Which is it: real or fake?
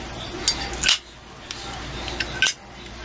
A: real